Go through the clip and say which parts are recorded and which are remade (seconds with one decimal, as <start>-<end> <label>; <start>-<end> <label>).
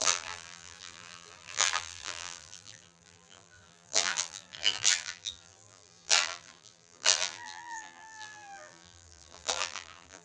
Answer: 0.0-10.2 remade